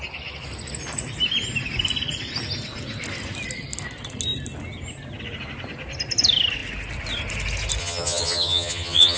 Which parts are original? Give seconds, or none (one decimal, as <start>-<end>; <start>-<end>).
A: 0.0-7.8